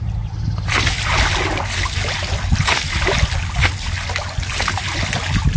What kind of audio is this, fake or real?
real